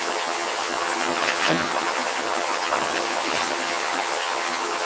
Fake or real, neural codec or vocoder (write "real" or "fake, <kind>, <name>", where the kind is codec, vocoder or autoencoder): fake, vocoder, HiFi-GAN